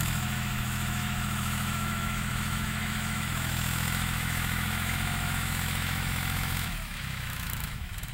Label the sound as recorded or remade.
remade